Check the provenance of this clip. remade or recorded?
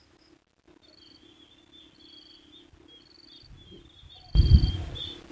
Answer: recorded